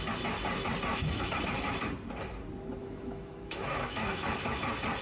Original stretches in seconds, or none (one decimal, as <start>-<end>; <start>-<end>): 0.0-0.9; 1.4-2.8; 4.6-5.0